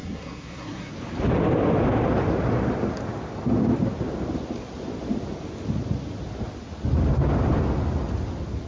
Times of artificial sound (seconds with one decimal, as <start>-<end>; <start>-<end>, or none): 0.0-0.9